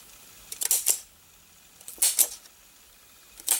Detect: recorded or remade recorded